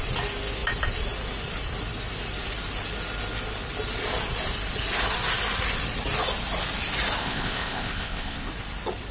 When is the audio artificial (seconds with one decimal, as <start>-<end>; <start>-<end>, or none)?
7.2-8.5